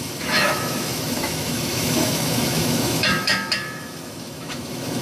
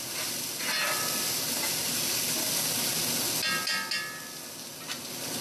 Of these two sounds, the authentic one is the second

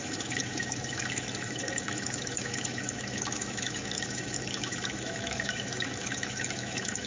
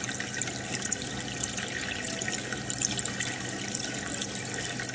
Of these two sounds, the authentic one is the second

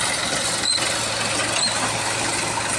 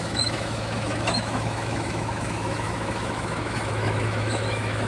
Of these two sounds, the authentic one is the first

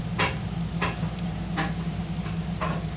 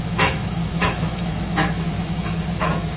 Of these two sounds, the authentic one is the first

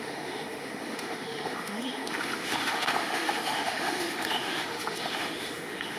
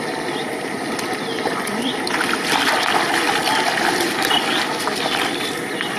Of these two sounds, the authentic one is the second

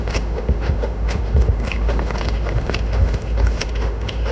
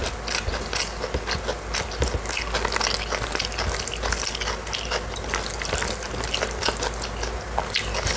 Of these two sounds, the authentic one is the second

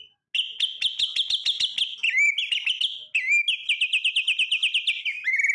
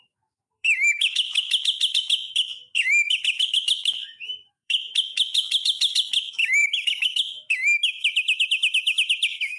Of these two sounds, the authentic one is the first